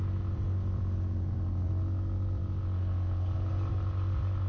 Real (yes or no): yes